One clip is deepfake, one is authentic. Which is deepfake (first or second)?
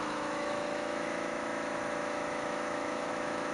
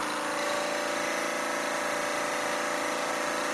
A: first